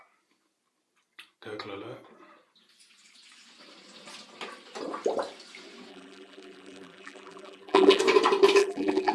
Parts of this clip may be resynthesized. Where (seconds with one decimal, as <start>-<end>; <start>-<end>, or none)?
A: 5.9-8.0; 8.6-9.1